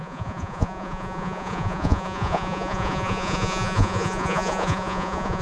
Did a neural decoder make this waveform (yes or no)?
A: yes